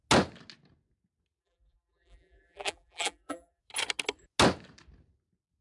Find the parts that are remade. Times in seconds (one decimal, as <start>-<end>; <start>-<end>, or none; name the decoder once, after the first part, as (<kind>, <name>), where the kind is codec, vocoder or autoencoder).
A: 1.4-3.6 (vocoder, BigVGAN v2)